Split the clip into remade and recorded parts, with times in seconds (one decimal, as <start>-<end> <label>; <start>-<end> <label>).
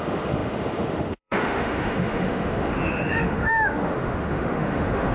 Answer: 0.0-5.1 remade